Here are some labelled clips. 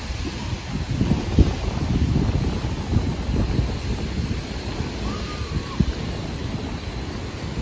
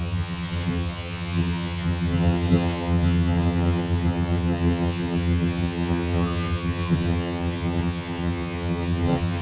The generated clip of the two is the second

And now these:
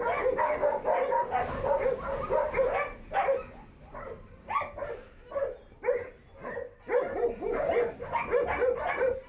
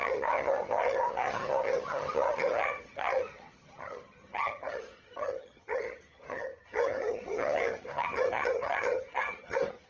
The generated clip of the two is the second